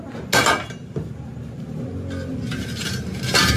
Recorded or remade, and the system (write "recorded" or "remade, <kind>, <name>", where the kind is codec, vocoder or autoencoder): recorded